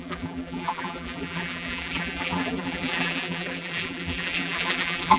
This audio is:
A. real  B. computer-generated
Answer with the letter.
B